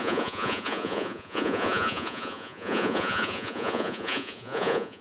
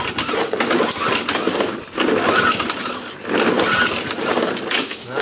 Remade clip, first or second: first